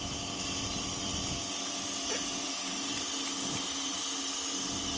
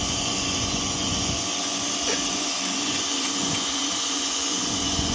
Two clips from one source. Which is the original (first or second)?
first